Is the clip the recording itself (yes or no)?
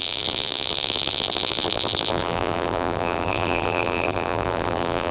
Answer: no